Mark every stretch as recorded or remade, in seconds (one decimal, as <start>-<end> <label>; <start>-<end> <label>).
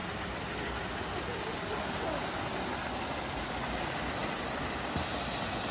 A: 0.0-5.7 recorded